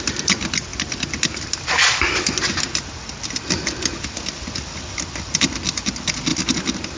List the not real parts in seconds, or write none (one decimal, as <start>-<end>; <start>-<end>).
6.3-7.0